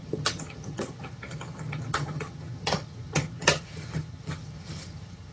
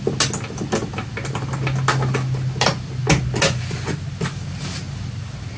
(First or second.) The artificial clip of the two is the first